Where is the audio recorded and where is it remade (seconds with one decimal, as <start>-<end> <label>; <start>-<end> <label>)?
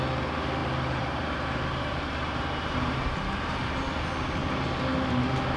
0.0-0.6 recorded; 0.6-4.0 remade; 4.0-5.6 recorded